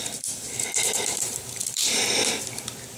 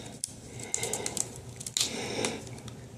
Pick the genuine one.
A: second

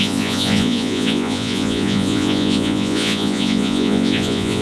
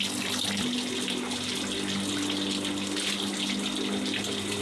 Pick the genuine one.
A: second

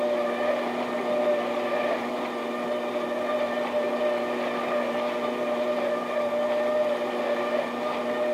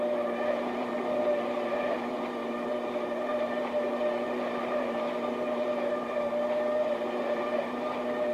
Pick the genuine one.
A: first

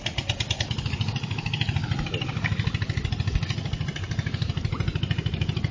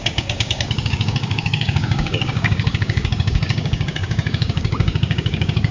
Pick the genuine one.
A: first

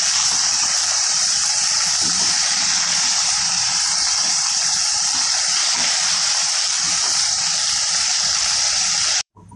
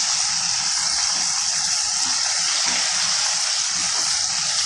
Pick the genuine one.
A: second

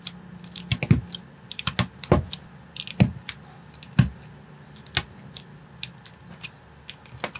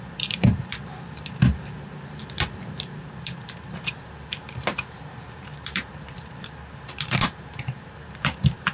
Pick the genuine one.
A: first